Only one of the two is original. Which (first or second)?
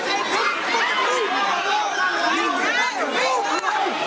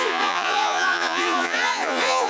first